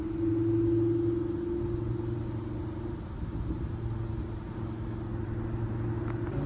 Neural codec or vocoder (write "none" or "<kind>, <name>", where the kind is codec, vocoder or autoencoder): none